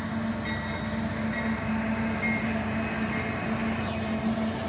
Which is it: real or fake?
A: real